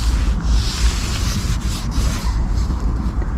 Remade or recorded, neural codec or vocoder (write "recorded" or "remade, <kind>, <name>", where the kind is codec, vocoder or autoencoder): recorded